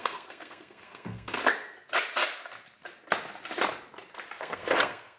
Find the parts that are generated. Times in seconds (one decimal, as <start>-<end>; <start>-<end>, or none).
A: 0.0-1.4; 4.4-5.2